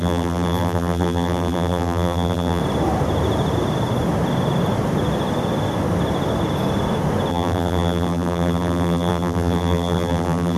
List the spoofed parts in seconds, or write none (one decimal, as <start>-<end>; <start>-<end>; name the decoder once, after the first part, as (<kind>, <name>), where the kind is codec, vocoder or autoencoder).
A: 0.0-2.6 (vocoder, BigVGAN v2); 7.3-10.6